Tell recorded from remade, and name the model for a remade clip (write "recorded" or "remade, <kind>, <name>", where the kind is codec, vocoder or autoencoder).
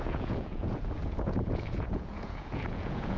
remade, vocoder, Vocos